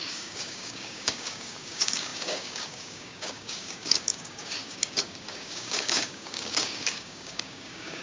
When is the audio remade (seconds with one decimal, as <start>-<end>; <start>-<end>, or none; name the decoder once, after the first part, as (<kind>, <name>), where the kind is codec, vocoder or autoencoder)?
0.0-8.0 (codec, DAC)